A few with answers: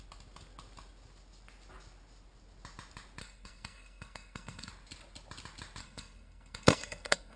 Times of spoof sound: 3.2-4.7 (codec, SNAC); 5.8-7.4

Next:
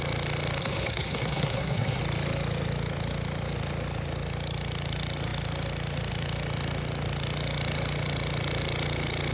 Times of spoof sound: 0.6-2.0 (codec, SNAC)

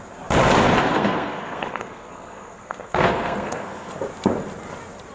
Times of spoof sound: 0.8-3.9 (codec, SNAC)

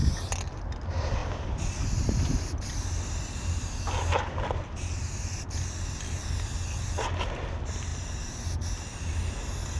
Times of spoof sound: none